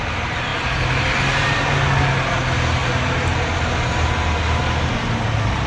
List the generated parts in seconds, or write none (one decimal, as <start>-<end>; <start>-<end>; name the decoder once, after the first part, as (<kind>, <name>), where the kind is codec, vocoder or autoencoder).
none